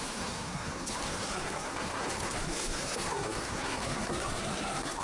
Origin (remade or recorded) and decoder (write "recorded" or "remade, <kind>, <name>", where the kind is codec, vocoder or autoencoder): remade, codec, SNAC